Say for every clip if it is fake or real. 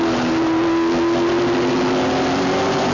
real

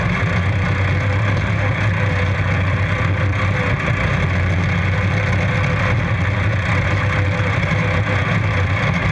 real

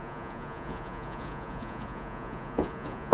fake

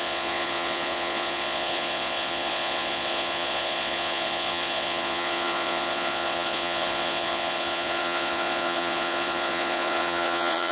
fake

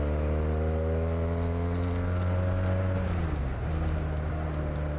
real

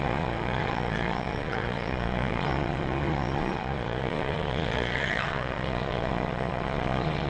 fake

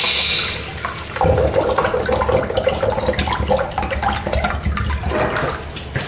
real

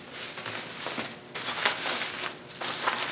real